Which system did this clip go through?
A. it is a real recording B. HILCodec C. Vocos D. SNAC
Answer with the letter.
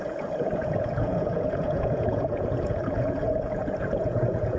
C